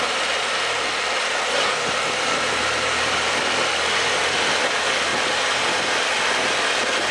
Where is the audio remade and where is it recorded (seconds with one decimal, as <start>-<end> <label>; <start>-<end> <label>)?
0.0-7.1 recorded